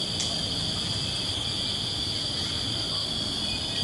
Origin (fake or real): real